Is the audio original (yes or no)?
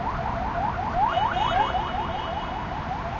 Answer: yes